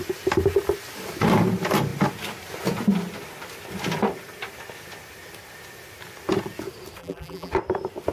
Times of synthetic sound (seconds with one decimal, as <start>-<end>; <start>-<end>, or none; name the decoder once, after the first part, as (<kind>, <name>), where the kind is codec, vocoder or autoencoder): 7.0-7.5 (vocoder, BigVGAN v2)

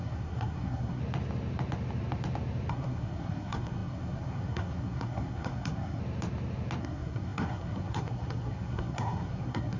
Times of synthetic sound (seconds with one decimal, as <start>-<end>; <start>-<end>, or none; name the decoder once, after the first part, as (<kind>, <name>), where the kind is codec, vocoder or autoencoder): 0.0-1.0 (codec, SNAC); 2.7-6.0; 6.8-9.8

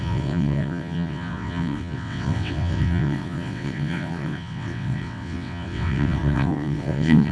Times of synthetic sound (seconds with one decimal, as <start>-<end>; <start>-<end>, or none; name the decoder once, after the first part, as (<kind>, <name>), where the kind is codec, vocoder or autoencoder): 0.0-7.3 (vocoder, WaveNeXt)

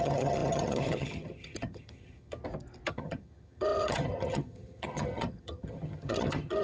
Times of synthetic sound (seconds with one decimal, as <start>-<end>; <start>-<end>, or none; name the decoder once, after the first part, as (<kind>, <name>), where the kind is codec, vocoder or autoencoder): 0.0-2.4 (vocoder, HiFi-GAN); 2.9-6.6

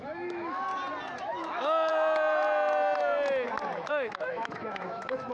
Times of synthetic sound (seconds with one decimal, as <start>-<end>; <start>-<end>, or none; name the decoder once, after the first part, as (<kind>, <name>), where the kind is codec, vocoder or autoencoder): 0.0-0.7 (autoencoder, DAC-VAE); 1.2-1.9; 3.9-5.3